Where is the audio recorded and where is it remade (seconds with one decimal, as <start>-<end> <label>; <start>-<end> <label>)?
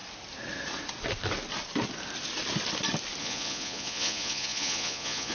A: 0.0-3.2 recorded; 3.2-5.3 remade